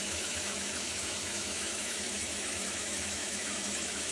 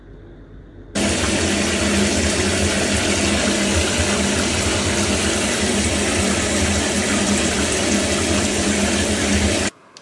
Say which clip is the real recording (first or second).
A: second